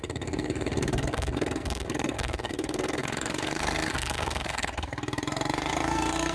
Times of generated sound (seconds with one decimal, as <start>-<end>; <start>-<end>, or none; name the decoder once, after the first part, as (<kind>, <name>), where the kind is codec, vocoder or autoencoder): 0.0-6.3 (codec, SNAC)